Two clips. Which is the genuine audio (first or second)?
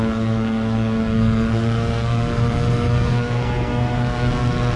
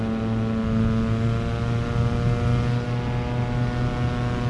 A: second